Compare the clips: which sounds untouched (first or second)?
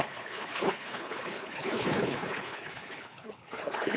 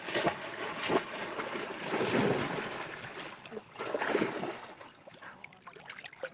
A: second